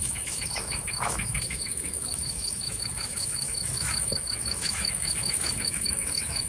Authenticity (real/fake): fake